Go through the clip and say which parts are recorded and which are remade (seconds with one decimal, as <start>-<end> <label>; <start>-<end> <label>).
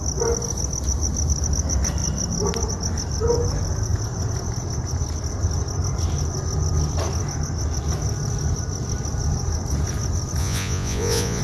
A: 0.0-10.4 recorded; 10.4-11.4 remade